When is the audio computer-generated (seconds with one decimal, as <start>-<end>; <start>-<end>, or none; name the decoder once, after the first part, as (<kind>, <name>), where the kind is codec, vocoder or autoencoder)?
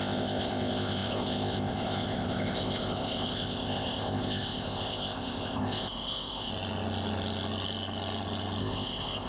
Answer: 0.0-6.5 (codec, ZipCodec); 8.6-9.3